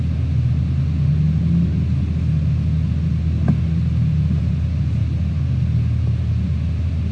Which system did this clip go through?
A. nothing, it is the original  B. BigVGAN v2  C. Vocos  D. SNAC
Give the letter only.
A